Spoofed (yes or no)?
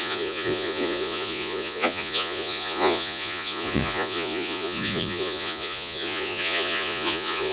yes